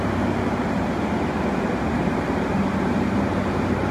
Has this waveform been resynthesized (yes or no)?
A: yes